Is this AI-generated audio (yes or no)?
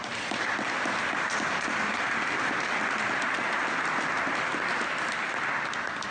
no